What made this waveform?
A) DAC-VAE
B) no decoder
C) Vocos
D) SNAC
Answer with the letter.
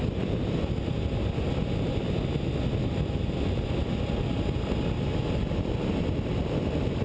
B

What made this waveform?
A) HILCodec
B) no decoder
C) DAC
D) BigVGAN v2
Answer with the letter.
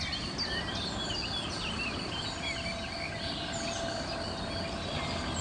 B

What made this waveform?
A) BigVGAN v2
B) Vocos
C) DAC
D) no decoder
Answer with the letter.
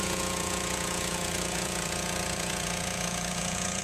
B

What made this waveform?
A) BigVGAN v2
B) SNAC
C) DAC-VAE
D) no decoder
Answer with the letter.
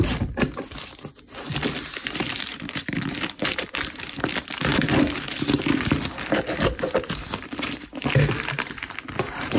A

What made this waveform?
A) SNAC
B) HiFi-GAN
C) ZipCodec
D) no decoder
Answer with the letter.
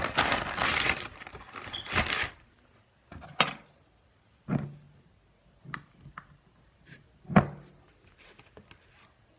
D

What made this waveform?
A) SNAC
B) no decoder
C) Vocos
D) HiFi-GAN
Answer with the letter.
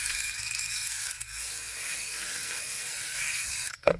A